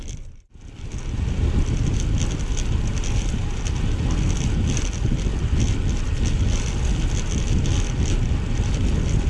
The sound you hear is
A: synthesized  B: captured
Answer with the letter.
B